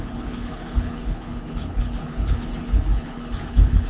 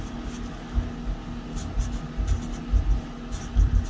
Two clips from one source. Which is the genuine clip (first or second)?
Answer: second